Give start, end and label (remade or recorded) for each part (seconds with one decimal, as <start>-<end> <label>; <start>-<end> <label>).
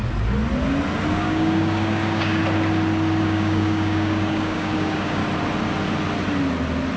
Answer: 0.0-1.1 recorded; 1.1-2.4 remade; 2.4-3.2 recorded; 3.2-5.2 remade; 5.2-7.0 recorded